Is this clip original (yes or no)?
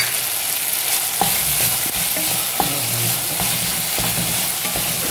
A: yes